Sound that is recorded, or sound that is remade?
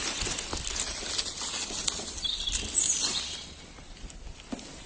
recorded